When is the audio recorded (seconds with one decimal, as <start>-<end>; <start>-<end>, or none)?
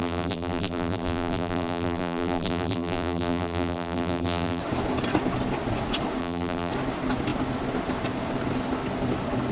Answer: 4.6-6.2; 6.7-9.5